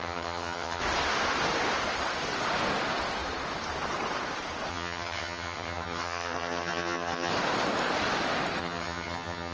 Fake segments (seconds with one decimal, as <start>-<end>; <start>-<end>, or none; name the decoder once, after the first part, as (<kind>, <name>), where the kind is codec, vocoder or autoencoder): 0.0-0.8 (vocoder, HiFi-GAN); 4.7-7.3; 8.6-9.5